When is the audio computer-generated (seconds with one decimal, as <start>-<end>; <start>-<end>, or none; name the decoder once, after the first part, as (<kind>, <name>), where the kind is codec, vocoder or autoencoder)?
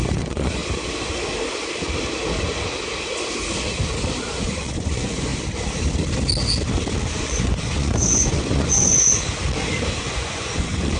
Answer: 0.0-0.6 (vocoder, Vocos); 4.4-5.3; 7.2-9.0; 10.0-11.0